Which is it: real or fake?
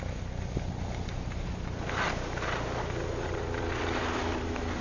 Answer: real